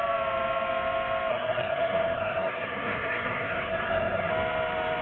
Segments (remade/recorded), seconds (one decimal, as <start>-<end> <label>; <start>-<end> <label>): 0.0-1.3 recorded; 1.3-4.3 remade; 4.3-5.0 recorded

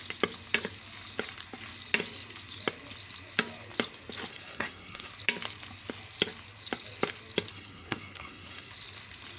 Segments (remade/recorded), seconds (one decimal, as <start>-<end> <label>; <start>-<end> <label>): 0.0-4.3 recorded; 4.3-5.1 remade; 5.1-7.5 recorded; 7.5-8.7 remade; 8.7-9.4 recorded

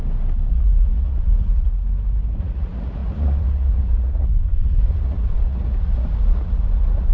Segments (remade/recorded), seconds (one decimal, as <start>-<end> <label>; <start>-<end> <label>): 0.0-0.5 recorded; 0.5-1.7 remade; 1.7-2.4 recorded; 2.4-7.1 remade

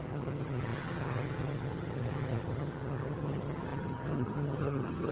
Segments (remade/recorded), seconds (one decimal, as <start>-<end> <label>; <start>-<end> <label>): 0.0-5.1 remade

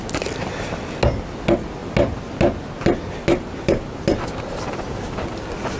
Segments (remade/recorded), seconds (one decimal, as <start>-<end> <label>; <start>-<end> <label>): 0.0-5.8 recorded

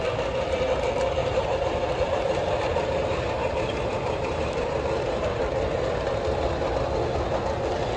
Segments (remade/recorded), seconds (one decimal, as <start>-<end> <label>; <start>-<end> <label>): 0.0-1.2 recorded; 1.2-5.4 remade; 5.4-8.0 recorded

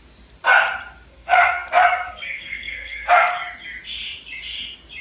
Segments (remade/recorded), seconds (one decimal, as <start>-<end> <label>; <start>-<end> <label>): 0.0-1.1 recorded; 1.1-3.1 remade; 3.1-5.0 recorded

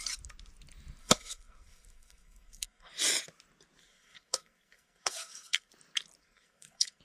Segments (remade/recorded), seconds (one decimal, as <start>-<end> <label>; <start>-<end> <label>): 0.0-1.0 recorded; 1.0-2.9 remade; 2.9-3.8 recorded; 3.8-5.7 remade; 5.7-6.2 recorded; 6.2-7.0 remade